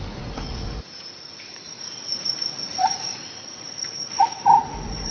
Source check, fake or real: fake